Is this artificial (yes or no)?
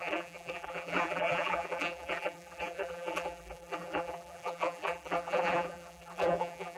yes